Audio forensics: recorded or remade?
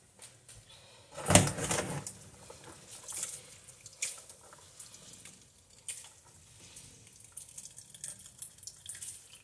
recorded